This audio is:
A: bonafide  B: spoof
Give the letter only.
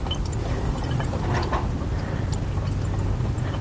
A